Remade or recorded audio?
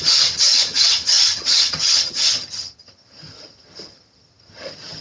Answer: remade